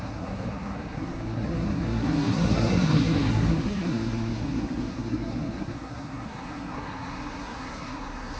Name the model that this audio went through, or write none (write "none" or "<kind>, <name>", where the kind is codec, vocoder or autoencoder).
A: codec, SNAC